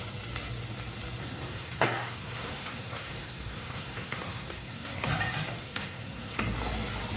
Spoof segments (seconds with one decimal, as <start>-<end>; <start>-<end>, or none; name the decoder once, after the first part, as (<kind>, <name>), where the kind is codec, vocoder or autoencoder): 1.2-5.1 (codec, SNAC); 5.6-6.4